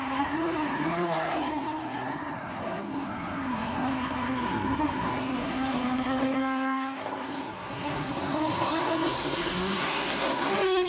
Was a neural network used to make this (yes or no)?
yes